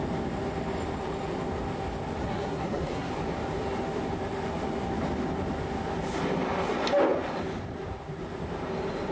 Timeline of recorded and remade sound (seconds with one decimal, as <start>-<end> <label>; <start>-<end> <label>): 0.0-2.2 recorded; 2.2-3.1 remade; 3.1-9.1 recorded